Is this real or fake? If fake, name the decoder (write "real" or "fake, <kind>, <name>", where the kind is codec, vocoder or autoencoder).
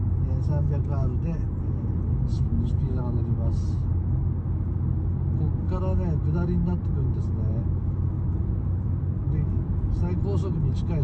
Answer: real